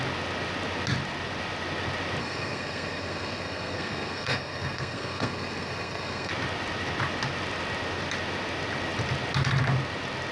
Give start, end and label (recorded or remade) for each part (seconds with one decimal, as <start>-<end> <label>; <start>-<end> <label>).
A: 0.0-2.2 recorded; 2.2-6.3 remade; 6.3-10.3 recorded